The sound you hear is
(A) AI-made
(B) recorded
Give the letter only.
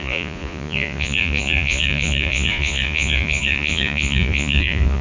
A